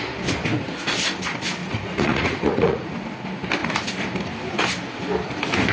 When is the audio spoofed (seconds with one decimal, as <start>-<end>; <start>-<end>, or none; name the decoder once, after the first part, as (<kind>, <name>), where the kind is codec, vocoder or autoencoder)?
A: 1.6-2.9 (vocoder, Vocos)